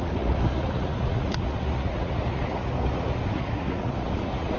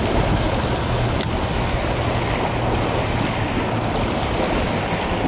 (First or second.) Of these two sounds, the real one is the second